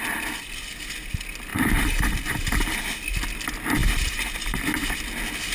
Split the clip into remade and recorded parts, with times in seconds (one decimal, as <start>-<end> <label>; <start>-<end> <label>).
0.0-1.5 recorded; 1.5-2.8 remade; 2.8-3.8 recorded; 3.8-4.3 remade; 4.3-5.5 recorded